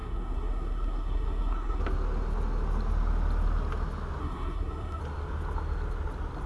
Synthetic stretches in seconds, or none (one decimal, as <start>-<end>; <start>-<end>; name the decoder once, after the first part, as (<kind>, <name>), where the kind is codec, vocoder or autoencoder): 0.0-1.8 (codec, SNAC); 4.2-5.0